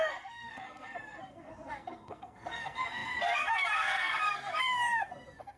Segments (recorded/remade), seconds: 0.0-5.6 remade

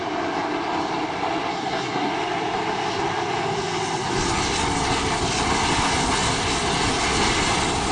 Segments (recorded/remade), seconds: 0.0-1.5 recorded; 1.5-2.1 remade; 2.1-7.9 recorded

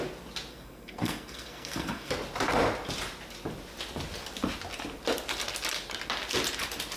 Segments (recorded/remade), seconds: 0.0-0.5 recorded; 0.5-2.1 remade; 2.1-7.0 recorded